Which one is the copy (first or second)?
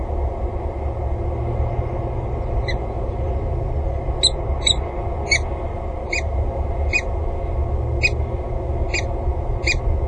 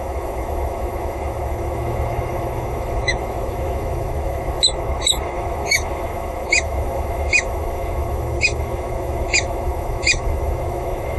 second